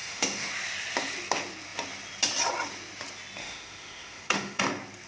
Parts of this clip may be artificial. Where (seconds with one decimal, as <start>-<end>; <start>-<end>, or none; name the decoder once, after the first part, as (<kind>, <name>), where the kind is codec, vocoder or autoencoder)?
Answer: 0.0-0.5 (autoencoder, DAC-VAE); 3.4-4.6